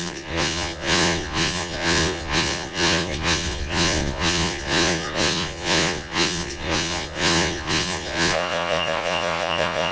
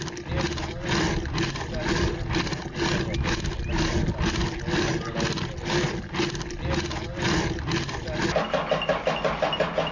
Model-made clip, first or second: first